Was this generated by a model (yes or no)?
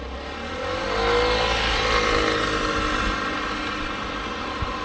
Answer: no